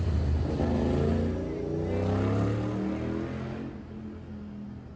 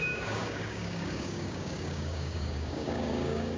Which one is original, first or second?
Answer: first